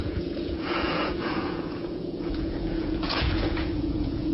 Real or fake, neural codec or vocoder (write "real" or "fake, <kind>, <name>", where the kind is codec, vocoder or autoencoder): fake, vocoder, Vocos